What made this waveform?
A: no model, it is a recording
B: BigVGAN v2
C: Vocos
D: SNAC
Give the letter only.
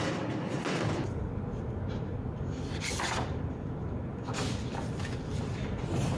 A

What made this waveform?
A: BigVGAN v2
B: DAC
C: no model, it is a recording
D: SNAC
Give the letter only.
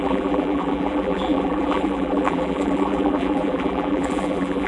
A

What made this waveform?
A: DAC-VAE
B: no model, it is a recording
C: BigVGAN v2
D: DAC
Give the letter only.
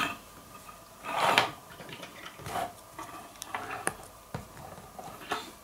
C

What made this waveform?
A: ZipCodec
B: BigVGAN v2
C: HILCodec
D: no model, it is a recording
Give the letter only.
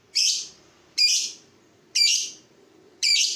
B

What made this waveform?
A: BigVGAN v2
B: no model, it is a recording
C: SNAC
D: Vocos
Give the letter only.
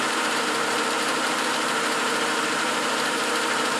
A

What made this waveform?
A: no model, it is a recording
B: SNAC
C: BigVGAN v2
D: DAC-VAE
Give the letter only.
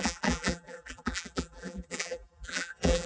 C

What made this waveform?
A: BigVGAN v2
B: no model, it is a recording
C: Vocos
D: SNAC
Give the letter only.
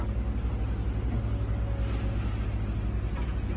B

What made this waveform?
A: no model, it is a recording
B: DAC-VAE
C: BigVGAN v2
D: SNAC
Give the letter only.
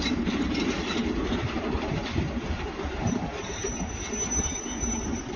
C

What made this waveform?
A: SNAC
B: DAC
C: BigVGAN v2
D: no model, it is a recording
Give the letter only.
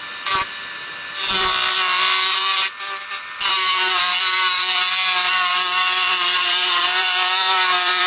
C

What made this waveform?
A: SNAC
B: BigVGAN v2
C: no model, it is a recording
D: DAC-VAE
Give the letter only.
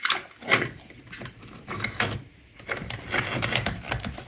C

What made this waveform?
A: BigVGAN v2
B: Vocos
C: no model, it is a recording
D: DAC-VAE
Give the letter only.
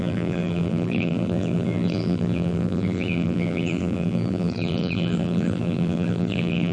A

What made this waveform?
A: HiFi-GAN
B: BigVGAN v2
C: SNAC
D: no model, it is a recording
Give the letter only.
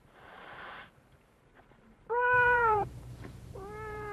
B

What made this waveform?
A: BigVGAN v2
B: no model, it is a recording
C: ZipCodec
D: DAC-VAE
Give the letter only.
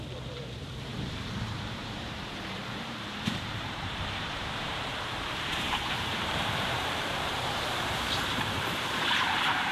A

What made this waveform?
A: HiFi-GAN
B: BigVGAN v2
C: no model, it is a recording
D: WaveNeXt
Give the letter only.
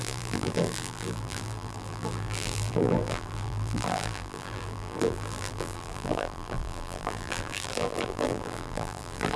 B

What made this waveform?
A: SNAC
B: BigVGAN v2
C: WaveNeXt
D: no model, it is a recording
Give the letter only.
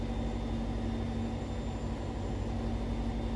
D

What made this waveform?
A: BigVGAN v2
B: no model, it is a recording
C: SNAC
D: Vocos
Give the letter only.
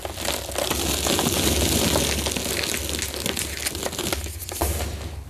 B